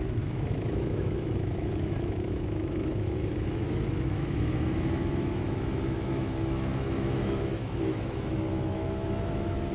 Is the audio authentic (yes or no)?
no